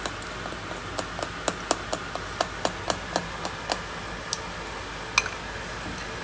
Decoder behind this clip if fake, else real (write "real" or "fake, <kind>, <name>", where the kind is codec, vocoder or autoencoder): real